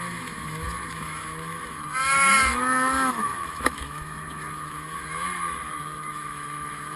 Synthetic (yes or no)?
yes